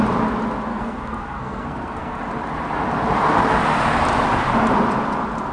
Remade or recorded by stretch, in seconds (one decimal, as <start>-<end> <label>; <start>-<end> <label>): 0.0-0.7 recorded; 0.7-2.2 remade; 2.2-5.5 recorded